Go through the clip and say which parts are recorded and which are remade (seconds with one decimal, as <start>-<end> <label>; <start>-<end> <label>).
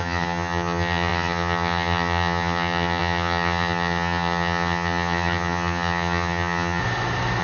0.0-6.8 remade; 6.8-7.4 recorded